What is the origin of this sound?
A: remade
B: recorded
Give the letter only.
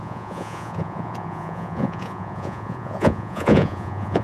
A